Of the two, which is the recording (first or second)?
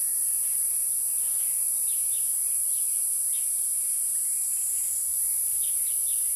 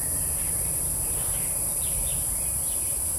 first